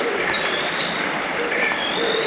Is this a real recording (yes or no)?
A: yes